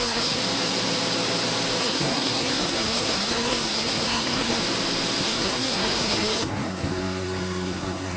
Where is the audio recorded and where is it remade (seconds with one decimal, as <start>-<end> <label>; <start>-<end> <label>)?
0.0-0.4 remade; 0.4-1.8 recorded; 1.8-4.6 remade; 4.6-5.2 recorded; 5.2-8.2 remade